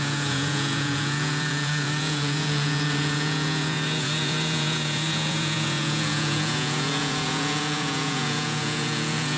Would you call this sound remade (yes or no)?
yes